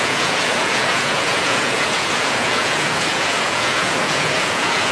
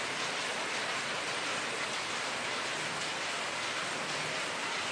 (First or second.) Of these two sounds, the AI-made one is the first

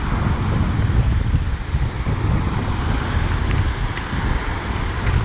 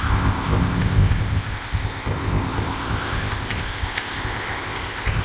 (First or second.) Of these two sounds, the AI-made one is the second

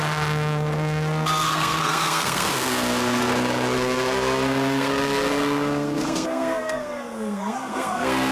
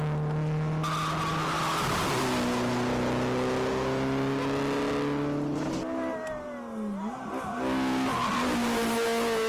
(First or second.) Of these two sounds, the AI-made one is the first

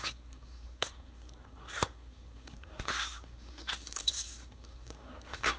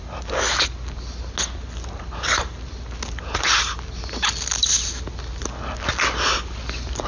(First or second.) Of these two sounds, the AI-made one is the first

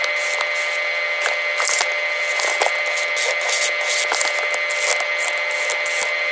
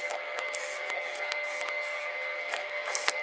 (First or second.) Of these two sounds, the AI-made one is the second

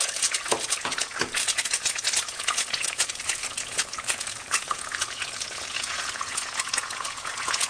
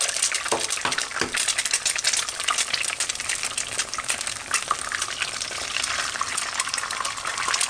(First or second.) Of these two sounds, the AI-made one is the first